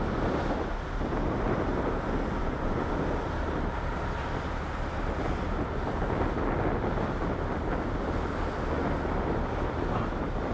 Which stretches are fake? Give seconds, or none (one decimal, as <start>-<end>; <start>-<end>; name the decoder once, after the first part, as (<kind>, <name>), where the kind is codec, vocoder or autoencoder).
2.4-2.9 (vocoder, Vocos)